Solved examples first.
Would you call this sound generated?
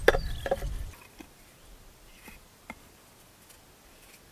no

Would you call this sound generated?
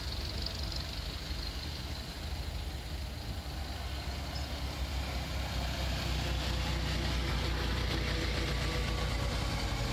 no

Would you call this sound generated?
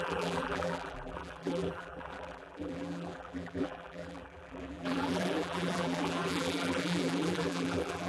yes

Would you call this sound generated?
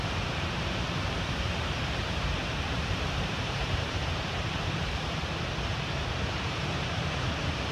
yes